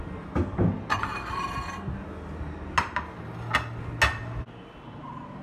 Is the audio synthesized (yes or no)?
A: no